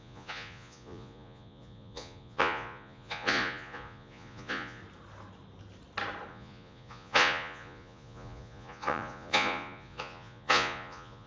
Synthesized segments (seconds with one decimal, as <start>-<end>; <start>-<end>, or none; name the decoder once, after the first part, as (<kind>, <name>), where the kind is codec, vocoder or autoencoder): 0.0-4.8 (vocoder, Vocos); 6.3-11.3